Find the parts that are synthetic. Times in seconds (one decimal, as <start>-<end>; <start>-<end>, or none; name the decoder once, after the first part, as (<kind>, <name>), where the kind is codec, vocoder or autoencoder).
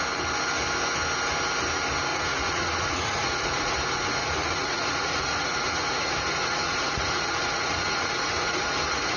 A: 2.1-3.7 (vocoder, Vocos); 4.2-9.2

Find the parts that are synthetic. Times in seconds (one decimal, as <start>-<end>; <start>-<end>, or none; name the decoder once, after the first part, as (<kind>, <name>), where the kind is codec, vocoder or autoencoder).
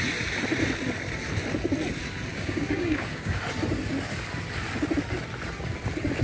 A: 2.3-3.4 (codec, DAC)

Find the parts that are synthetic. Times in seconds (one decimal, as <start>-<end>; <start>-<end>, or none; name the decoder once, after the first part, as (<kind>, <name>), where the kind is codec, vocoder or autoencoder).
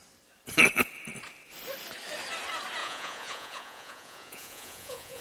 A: 2.8-5.2 (vocoder, Vocos)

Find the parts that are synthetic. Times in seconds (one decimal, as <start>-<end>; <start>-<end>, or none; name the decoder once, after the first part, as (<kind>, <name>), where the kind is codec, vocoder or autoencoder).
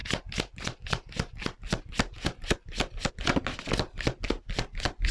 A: none